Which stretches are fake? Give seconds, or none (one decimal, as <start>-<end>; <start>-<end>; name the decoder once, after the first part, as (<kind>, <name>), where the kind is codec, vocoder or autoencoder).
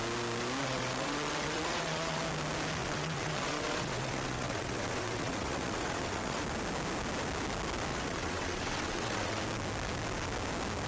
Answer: 0.6-2.2 (vocoder, WaveNeXt); 2.8-6.4; 7.9-9.4